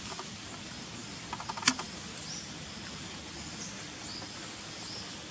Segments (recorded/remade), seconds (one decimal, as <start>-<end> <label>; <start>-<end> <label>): 0.0-5.3 recorded